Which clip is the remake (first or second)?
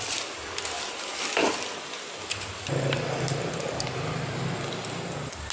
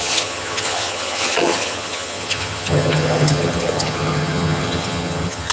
second